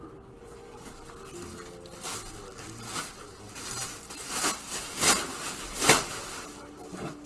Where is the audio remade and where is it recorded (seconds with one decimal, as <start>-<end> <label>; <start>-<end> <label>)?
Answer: 0.0-0.4 recorded; 0.4-0.9 remade; 0.9-7.3 recorded